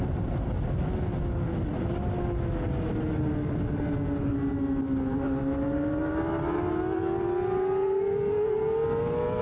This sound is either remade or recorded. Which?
recorded